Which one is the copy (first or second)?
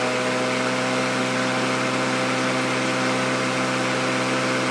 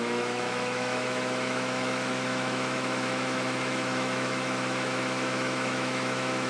second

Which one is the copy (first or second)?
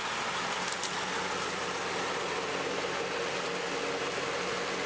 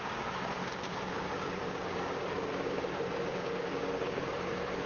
second